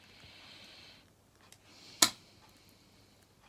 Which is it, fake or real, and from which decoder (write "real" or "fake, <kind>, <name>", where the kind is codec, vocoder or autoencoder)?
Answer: real